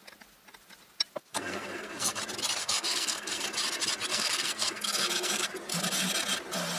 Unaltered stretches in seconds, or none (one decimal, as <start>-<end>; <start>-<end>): 0.0-1.3; 2.2-2.6; 3.5-4.1; 5.5-6.8